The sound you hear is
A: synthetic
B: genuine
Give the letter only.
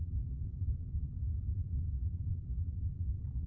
A